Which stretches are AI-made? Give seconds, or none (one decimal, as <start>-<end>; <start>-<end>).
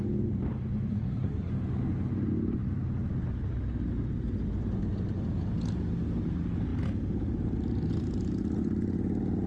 0.9-1.5